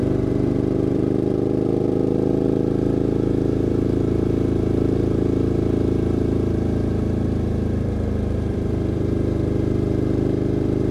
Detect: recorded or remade remade